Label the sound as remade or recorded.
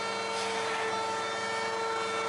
recorded